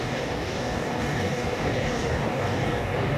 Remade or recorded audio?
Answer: remade